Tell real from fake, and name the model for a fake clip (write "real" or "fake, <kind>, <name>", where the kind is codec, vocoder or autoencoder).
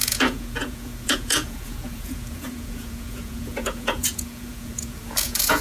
fake, vocoder, Vocos